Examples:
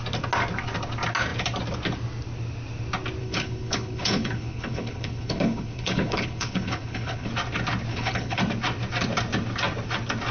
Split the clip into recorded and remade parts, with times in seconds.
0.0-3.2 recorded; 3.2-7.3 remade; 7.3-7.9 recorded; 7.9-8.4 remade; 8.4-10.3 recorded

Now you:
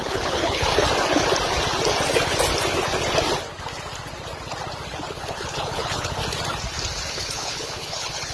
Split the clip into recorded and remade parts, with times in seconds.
0.0-0.7 remade; 0.7-5.1 recorded; 5.1-6.2 remade; 6.2-7.1 recorded; 7.1-8.3 remade

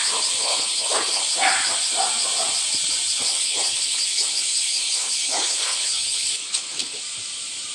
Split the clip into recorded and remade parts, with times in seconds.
0.0-0.4 recorded; 0.4-1.2 remade; 1.2-3.2 recorded; 3.2-7.0 remade; 7.0-7.7 recorded

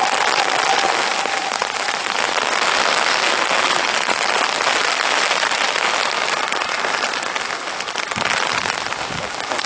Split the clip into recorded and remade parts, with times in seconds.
0.0-9.7 recorded

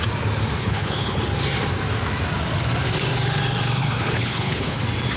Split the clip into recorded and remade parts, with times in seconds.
0.0-0.6 recorded; 0.6-1.2 remade; 1.2-3.8 recorded; 3.8-4.8 remade; 4.8-5.2 recorded